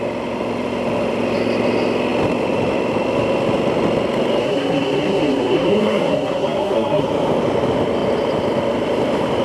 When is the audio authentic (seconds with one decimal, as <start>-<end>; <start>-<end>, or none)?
0.0-4.4; 7.1-9.4